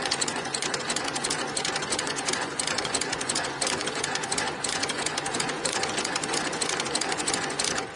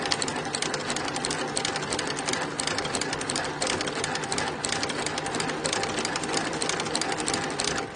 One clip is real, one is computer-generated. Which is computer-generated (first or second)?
first